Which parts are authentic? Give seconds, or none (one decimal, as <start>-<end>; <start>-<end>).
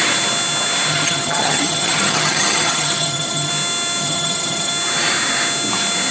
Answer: 0.0-0.9; 3.5-4.0; 4.7-6.1